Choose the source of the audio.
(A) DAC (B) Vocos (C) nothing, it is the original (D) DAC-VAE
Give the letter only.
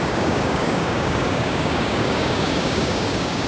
A